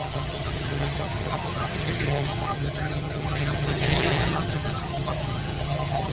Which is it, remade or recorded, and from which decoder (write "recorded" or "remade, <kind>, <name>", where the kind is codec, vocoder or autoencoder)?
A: remade, vocoder, HiFi-GAN